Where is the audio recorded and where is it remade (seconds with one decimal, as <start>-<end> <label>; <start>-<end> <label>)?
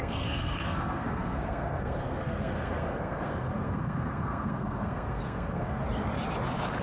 0.0-5.8 remade; 5.8-6.8 recorded